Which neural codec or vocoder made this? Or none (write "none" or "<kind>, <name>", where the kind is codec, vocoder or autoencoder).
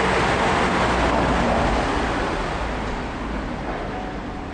none